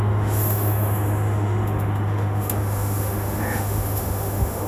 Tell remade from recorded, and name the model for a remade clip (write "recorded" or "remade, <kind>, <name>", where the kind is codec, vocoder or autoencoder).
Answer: remade, autoencoder, DAC-VAE